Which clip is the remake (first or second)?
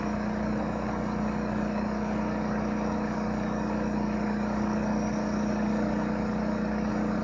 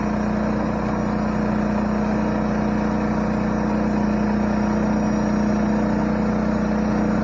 first